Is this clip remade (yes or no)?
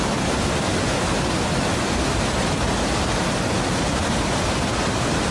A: no